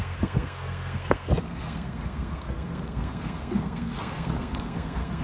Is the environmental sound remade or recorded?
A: remade